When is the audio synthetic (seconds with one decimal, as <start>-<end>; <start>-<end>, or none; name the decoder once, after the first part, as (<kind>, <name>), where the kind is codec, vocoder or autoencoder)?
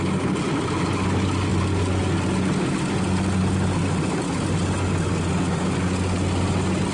none